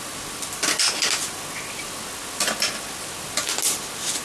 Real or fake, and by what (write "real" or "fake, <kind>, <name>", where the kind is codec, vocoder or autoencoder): real